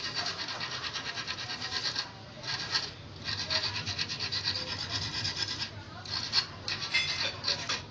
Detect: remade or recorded recorded